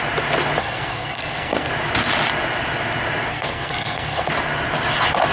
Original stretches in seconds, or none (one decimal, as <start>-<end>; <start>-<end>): 0.0-0.6; 1.7-3.3; 4.3-5.3